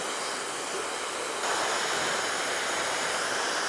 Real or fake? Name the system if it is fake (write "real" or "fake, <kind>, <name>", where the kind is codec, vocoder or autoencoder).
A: real